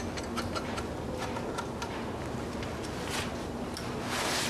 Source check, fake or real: real